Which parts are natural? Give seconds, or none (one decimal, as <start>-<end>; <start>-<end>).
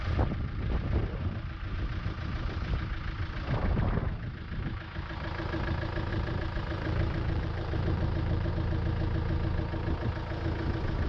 0.0-1.0; 1.9-6.1; 8.5-11.1